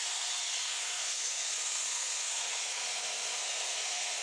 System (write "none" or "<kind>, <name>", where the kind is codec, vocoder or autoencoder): codec, SNAC